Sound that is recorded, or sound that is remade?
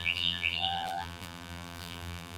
remade